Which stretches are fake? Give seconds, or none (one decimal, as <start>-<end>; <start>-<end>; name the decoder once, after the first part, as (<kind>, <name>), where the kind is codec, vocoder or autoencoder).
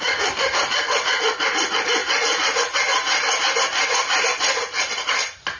none